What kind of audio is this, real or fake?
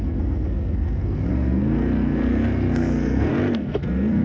fake